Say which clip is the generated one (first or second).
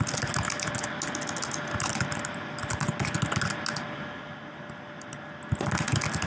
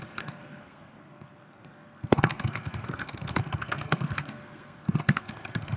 second